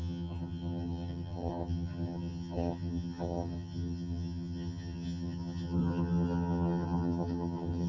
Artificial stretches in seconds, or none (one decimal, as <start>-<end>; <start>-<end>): 0.0-7.9